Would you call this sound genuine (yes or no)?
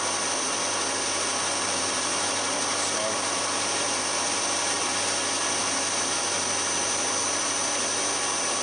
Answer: yes